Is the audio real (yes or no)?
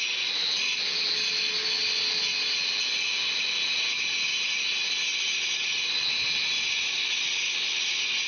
yes